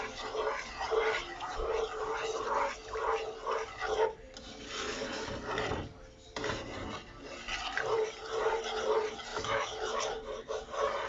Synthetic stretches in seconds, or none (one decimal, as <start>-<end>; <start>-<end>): 9.3-10.0